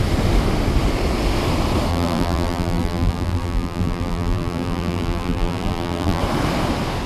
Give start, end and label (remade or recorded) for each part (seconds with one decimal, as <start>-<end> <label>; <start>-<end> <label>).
0.0-1.9 recorded; 1.9-6.2 remade; 6.2-7.1 recorded